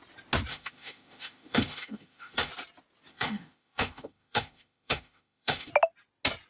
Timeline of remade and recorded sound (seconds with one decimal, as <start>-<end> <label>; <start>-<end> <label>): 0.0-0.5 recorded; 0.5-2.5 remade; 2.5-3.1 recorded; 3.1-5.7 remade; 5.7-6.5 recorded